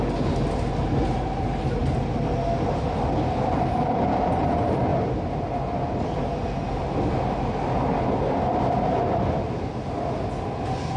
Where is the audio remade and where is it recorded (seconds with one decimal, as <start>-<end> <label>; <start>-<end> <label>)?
0.0-11.0 recorded